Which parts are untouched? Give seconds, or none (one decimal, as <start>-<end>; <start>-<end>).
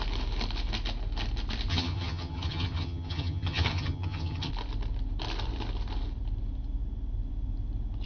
0.0-1.7; 4.5-8.1